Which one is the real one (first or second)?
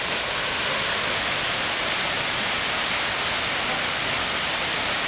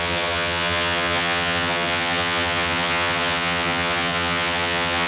first